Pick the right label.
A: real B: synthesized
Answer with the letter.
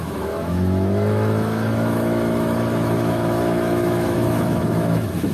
B